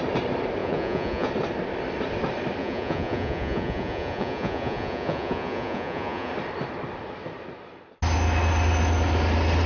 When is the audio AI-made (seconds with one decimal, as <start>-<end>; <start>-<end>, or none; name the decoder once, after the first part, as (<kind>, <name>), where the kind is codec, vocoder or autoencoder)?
0.6-1.3 (vocoder, Vocos); 2.6-6.3